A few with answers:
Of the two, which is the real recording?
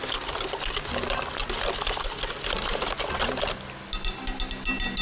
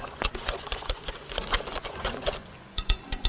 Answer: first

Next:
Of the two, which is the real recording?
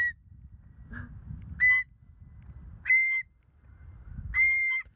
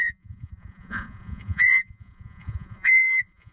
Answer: first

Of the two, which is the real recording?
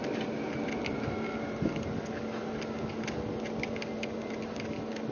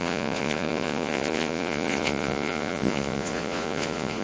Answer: first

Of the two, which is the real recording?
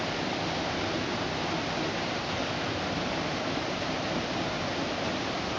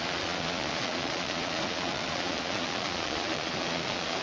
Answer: first